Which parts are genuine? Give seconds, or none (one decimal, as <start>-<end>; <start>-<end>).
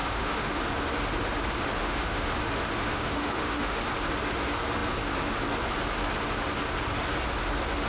0.6-1.8; 2.3-2.8; 3.8-7.9